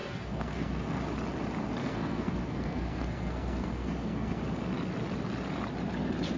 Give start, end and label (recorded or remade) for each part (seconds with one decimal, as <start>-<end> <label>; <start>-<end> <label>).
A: 0.0-1.0 remade; 1.0-1.8 recorded; 1.8-4.4 remade; 4.4-6.4 recorded

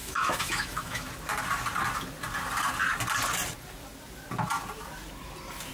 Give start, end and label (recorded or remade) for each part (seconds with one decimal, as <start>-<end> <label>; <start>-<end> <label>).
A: 0.0-1.1 remade; 1.1-5.7 recorded

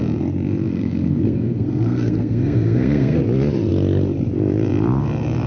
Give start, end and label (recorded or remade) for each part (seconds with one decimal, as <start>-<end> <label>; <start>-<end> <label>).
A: 0.0-0.7 recorded; 0.7-3.2 remade; 3.2-5.5 recorded

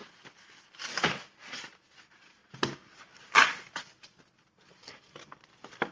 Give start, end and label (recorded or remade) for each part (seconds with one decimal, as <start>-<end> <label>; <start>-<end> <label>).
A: 0.0-5.9 recorded

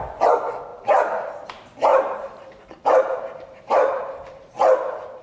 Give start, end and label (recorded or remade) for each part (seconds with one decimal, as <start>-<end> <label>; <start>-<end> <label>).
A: 0.0-1.9 recorded; 1.9-5.2 remade